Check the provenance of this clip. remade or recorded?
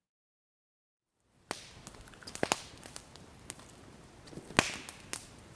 recorded